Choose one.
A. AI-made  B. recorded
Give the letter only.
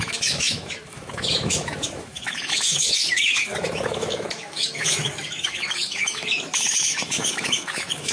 A